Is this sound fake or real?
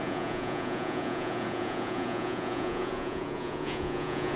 fake